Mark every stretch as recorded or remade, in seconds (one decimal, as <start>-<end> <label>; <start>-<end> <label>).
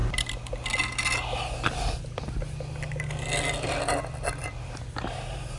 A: 0.0-4.4 recorded; 4.4-5.6 remade